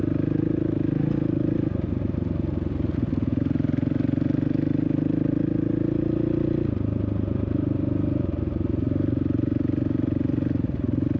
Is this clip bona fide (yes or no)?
yes